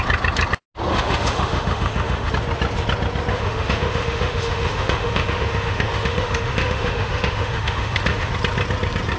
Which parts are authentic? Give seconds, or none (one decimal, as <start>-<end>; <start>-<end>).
0.0-0.9; 2.3-3.3; 8.3-9.2